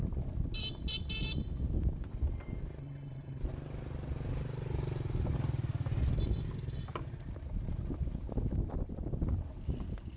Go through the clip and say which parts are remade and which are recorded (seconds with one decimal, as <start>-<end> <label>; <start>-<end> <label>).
0.0-2.8 recorded; 2.8-3.4 remade; 3.4-10.2 recorded